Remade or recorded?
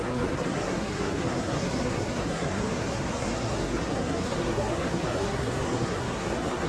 remade